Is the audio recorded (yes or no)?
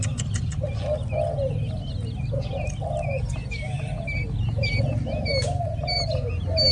yes